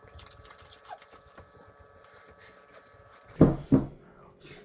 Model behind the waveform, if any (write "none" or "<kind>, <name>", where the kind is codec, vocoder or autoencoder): none